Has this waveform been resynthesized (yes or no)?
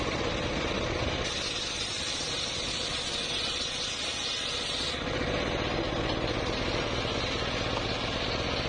no